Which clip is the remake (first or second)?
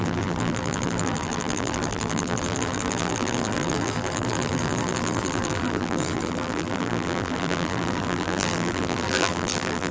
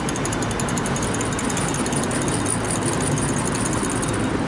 first